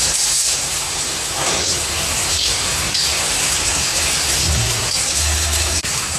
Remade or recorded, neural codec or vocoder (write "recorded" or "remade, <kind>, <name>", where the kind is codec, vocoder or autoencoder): remade, codec, SNAC